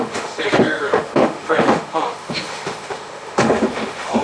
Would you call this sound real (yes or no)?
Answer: no